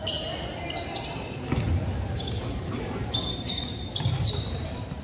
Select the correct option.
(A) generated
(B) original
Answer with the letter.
A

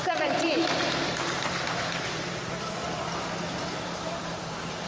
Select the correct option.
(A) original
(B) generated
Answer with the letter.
B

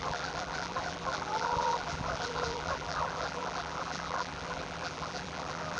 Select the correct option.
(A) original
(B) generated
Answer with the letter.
B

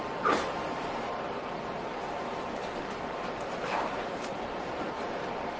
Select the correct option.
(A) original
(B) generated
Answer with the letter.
B